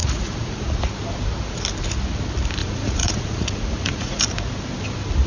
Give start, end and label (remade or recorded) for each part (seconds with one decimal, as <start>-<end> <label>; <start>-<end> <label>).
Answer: 0.0-0.8 remade; 0.8-2.6 recorded; 2.6-4.2 remade; 4.2-5.3 recorded